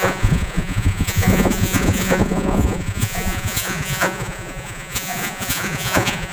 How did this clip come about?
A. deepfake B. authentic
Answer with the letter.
A